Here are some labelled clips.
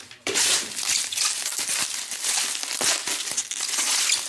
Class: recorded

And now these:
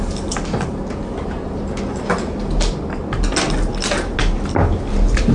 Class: recorded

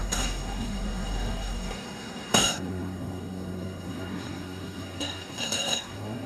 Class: remade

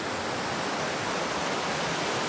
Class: recorded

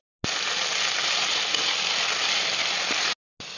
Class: recorded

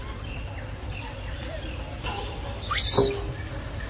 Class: recorded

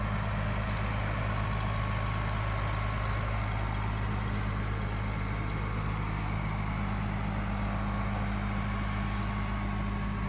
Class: recorded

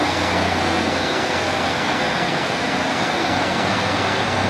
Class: remade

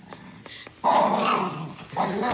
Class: recorded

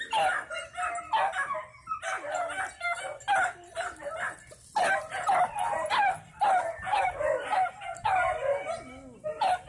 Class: recorded